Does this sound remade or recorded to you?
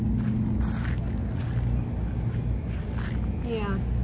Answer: recorded